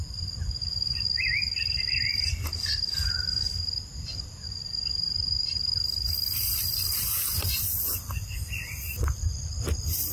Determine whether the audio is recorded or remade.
remade